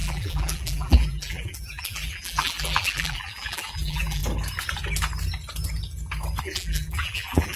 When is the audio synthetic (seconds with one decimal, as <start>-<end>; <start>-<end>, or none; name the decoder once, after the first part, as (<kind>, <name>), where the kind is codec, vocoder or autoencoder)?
0.0-4.2 (vocoder, BigVGAN v2); 6.4-7.6